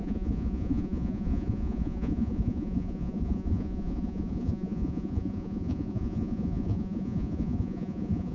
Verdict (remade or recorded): remade